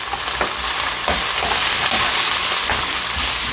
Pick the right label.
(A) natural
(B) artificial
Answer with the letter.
A